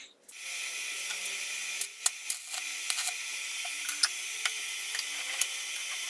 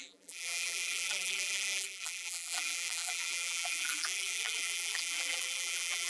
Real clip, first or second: first